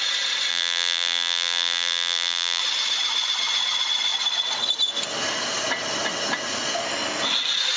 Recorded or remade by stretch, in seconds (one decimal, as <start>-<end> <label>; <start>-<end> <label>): 0.0-0.5 recorded; 0.5-2.6 remade; 2.6-7.8 recorded